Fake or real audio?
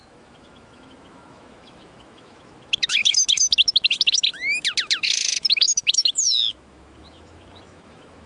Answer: fake